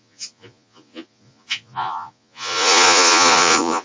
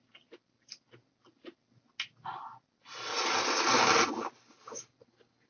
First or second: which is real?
second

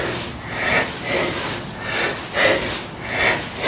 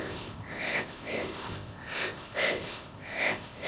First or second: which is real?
first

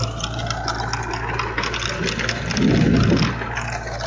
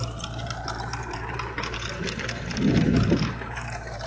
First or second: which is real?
first